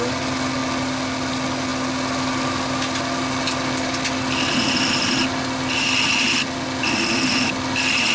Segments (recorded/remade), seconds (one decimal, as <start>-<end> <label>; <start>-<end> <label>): 0.0-8.1 recorded